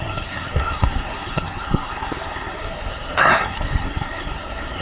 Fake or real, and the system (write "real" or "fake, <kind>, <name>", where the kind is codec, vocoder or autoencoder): fake, codec, SNAC